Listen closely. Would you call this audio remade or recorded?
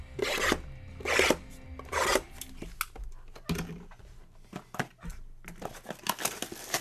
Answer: recorded